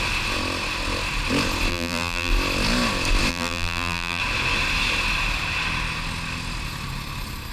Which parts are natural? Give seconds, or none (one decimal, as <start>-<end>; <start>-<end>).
0.0-1.7; 2.3-3.3; 4.2-7.5